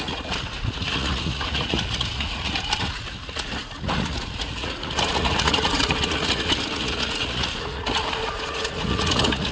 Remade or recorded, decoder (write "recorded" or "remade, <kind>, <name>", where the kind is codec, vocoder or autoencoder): remade, vocoder, Vocos